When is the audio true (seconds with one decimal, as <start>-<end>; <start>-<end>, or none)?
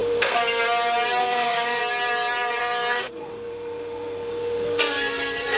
0.6-1.2; 1.8-2.6